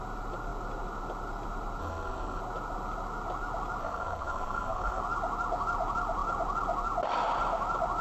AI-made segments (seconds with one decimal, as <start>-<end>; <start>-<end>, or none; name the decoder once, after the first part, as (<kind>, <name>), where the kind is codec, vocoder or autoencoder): 1.8-2.4 (codec, SNAC); 3.8-5.0